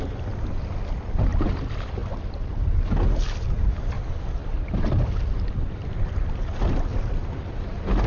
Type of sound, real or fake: real